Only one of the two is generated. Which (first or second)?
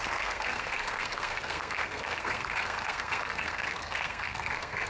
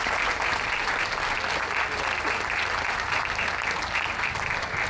first